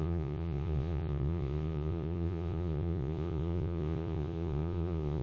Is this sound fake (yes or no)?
yes